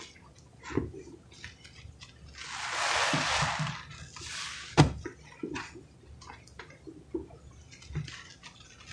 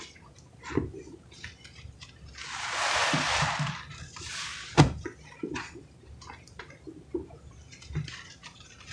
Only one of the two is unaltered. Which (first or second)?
first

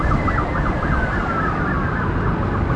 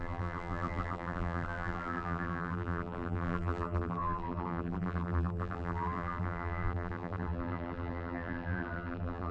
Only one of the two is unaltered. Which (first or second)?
first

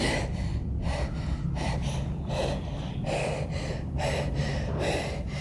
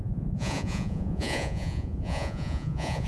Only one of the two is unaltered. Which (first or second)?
first